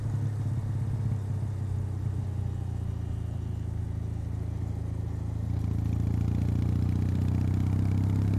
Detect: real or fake real